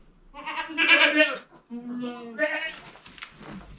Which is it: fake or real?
real